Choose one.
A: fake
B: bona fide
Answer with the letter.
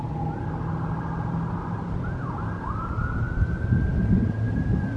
B